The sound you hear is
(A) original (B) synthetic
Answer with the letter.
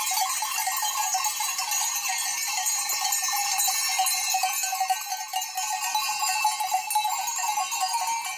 A